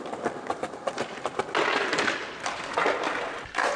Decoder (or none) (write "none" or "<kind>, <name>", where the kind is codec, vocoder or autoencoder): none